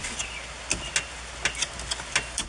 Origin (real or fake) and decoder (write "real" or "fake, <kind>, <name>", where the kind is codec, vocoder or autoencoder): real